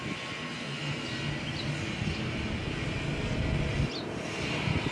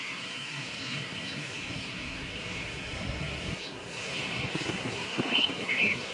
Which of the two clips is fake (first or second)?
second